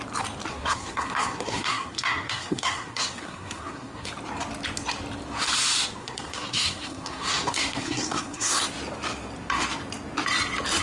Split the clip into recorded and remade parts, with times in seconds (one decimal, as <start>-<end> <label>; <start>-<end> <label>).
0.0-0.5 recorded; 0.5-4.1 remade; 4.1-6.0 recorded; 6.0-8.6 remade; 8.6-10.8 recorded